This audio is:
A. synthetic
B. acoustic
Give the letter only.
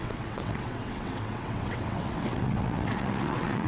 A